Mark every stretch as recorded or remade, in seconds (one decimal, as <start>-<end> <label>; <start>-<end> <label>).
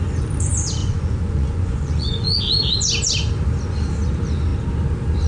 0.0-0.8 recorded; 0.8-2.4 remade; 2.4-5.3 recorded